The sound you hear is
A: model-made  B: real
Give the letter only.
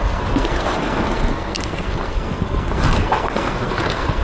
A